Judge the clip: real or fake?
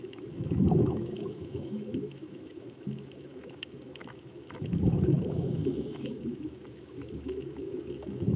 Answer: fake